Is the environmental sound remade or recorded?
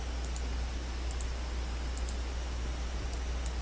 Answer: recorded